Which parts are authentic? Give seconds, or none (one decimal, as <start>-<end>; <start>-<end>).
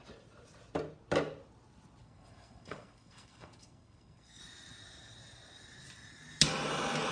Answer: 0.0-2.0; 4.4-7.1